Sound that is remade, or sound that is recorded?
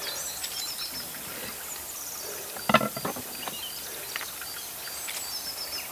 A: recorded